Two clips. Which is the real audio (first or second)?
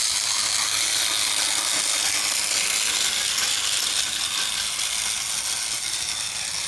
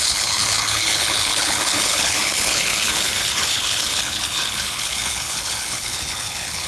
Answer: first